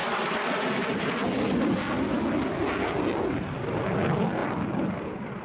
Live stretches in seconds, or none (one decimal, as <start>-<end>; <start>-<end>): 0.0-5.4